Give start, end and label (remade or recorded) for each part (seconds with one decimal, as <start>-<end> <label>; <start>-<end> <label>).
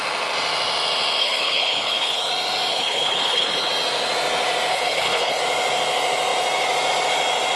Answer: 0.0-1.2 recorded; 1.2-2.3 remade; 2.3-2.7 recorded; 2.7-3.7 remade; 3.7-4.7 recorded; 4.7-5.4 remade; 5.4-7.6 recorded